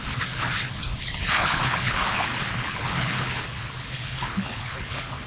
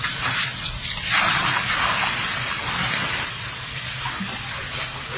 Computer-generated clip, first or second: first